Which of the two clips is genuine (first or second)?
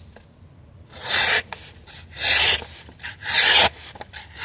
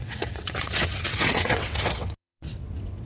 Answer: first